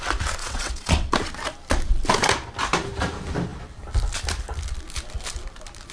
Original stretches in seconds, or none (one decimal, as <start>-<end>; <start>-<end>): 0.0-0.4; 1.1-5.9

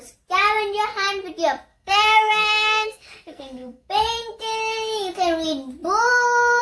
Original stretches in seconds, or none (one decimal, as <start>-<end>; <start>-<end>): 0.0-1.7; 3.9-6.6

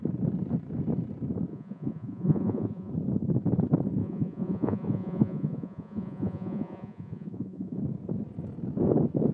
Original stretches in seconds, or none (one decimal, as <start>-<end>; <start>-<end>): 0.0-1.5; 2.9-4.0; 7.8-9.3

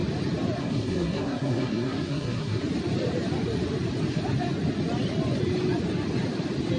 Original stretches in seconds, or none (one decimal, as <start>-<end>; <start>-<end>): 0.0-0.6; 2.6-6.8

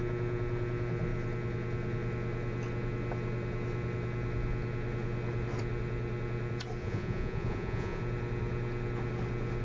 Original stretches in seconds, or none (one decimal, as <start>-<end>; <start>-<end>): 0.0-6.8; 8.0-9.6